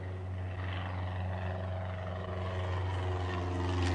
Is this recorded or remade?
recorded